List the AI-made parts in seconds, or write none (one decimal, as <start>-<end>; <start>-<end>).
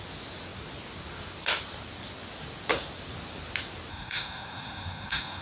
3.9-5.4